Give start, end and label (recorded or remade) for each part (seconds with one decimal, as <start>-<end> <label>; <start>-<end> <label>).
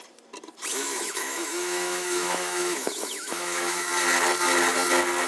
0.0-0.7 recorded; 0.7-3.9 remade; 3.9-5.3 recorded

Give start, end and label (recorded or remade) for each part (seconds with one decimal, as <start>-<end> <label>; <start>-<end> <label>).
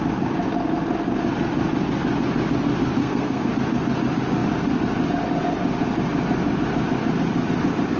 0.0-3.0 recorded; 3.0-3.5 remade; 3.5-8.0 recorded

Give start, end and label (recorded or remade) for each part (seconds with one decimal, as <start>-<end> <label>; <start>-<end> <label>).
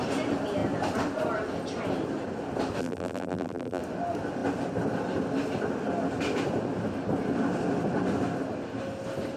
0.0-2.8 recorded; 2.8-3.8 remade; 3.8-9.4 recorded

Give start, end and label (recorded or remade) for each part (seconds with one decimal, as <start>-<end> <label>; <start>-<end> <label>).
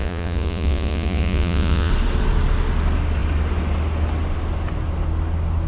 0.0-1.9 remade; 1.9-5.7 recorded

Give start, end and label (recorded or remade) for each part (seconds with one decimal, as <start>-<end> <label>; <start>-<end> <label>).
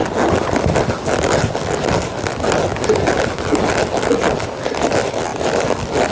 0.0-6.1 recorded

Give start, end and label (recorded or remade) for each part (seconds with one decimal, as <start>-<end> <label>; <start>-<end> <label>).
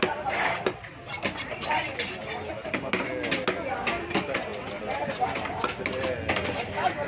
0.0-7.1 recorded